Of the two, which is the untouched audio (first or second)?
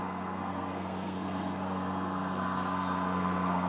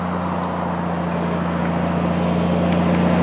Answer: second